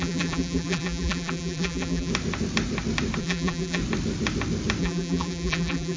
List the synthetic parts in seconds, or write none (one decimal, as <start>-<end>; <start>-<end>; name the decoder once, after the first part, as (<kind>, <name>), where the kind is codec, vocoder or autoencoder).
0.0-2.1 (vocoder, BigVGAN v2); 3.2-3.8; 4.8-6.0